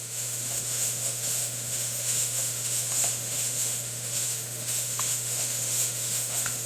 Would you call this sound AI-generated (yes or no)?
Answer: yes